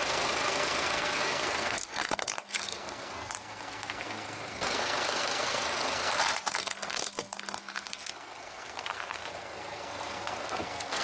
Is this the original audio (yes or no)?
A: no